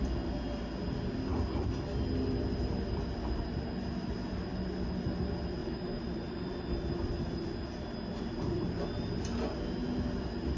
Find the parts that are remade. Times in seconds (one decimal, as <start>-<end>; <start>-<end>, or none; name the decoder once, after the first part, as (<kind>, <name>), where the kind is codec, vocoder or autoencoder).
5.6-8.7 (vocoder, BigVGAN v2)